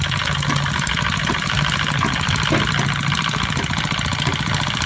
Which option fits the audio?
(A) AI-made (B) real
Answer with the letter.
B